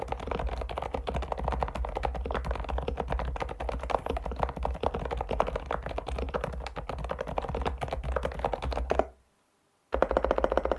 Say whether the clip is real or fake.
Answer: real